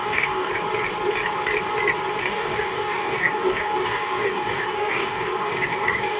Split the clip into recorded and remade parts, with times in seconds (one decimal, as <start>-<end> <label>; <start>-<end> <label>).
0.0-0.5 remade; 0.5-2.2 recorded; 2.2-6.2 remade